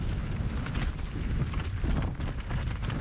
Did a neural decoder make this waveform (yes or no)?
no